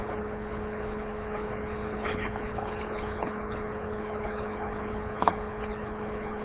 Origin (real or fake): fake